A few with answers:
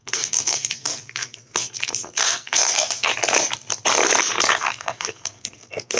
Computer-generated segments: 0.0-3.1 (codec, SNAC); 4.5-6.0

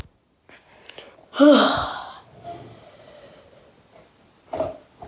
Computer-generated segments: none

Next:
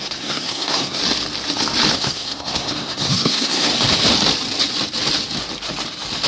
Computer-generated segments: 0.0-1.0 (codec, SNAC); 1.9-3.7